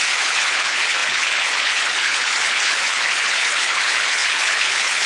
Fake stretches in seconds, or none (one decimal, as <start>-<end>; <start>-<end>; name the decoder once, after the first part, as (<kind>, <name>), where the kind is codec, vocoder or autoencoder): 0.0-5.1 (codec, HILCodec)